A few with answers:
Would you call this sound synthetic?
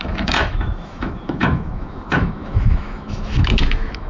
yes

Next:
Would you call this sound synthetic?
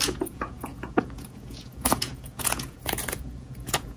yes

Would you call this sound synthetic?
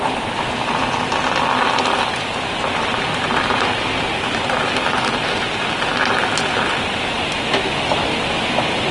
no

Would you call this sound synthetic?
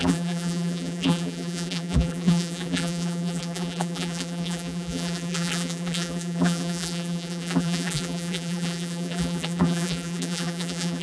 yes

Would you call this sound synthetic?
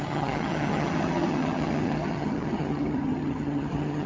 yes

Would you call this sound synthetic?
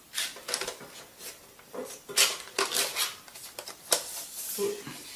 yes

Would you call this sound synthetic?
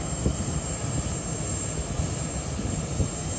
no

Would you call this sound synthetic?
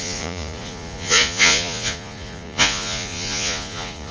yes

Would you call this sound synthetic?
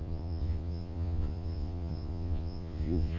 yes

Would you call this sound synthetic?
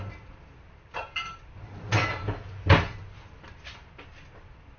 no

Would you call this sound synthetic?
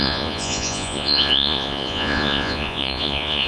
yes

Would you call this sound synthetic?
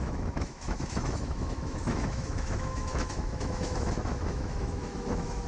yes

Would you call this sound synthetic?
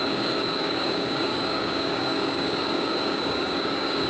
yes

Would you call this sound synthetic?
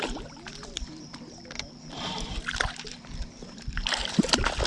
yes